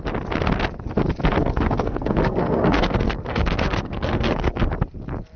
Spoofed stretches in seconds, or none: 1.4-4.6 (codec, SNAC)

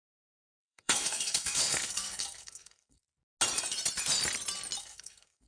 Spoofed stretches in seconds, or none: 0.0-3.0 (codec, SNAC); 4.8-5.5

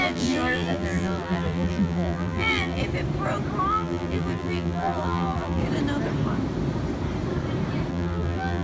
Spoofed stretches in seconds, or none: 0.0-2.8 (vocoder, BigVGAN v2); 3.7-5.6; 7.9-8.6

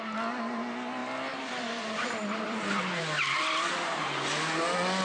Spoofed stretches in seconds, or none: 1.0-3.7 (vocoder, BigVGAN v2)

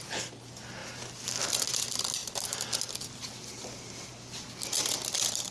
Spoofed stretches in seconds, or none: none